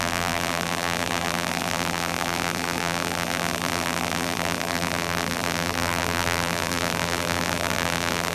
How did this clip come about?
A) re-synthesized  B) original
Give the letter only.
A